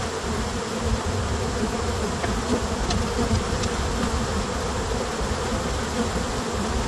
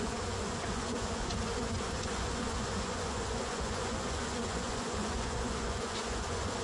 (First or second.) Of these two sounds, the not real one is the second